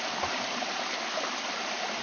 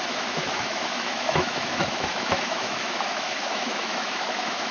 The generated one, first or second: second